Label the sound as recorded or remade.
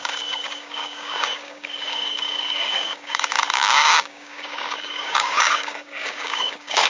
remade